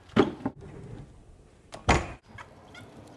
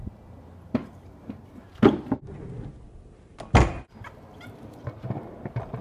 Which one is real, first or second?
second